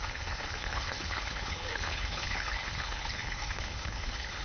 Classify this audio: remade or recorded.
remade